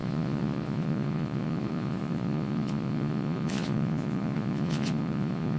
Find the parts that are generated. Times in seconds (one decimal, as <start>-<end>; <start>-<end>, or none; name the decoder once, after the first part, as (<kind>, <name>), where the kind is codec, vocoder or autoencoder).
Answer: 0.0-5.6 (vocoder, Vocos)